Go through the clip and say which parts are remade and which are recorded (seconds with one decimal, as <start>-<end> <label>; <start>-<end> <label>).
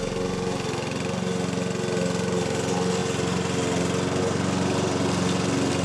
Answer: 0.0-5.8 recorded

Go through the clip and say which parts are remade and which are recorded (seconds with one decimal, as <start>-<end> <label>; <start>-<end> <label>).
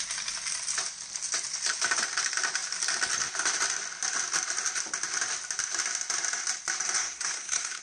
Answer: 0.0-7.0 recorded; 7.0-7.8 remade